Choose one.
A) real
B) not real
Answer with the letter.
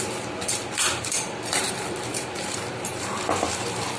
B